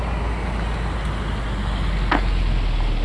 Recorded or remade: recorded